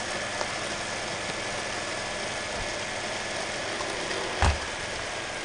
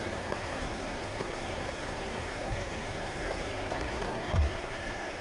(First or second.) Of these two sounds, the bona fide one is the first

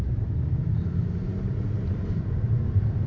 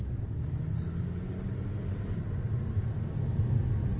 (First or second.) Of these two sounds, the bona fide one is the second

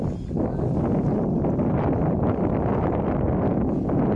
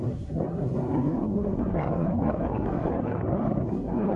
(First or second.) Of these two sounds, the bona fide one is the first